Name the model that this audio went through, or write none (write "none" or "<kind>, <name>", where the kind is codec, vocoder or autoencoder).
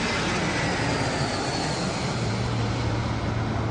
none